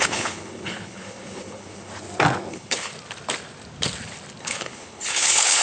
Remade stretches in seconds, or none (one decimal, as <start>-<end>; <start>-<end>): 0.0-1.9; 2.5-2.9; 4.4-5.6